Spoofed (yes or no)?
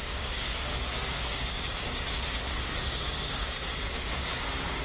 yes